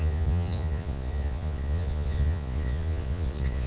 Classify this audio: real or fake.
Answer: fake